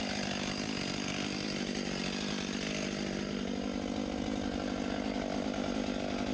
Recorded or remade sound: recorded